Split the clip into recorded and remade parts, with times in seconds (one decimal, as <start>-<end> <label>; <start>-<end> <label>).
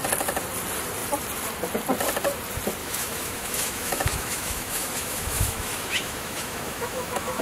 0.0-2.8 recorded; 2.8-7.4 remade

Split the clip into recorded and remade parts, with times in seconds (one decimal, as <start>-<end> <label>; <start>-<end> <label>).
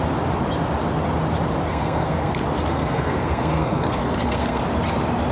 0.0-1.7 recorded; 1.7-2.3 remade; 2.3-2.7 recorded; 2.7-4.6 remade; 4.6-5.3 recorded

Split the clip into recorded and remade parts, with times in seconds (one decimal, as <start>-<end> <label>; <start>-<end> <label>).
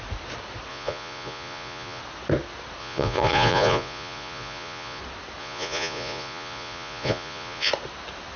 0.0-0.7 recorded; 0.7-2.0 remade; 2.0-2.8 recorded; 2.8-5.0 remade; 5.0-5.4 recorded; 5.4-7.7 remade; 7.7-8.4 recorded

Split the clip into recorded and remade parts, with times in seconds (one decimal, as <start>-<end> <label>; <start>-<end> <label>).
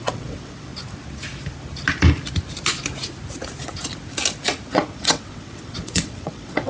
0.0-0.7 remade; 0.7-4.7 recorded; 4.7-6.7 remade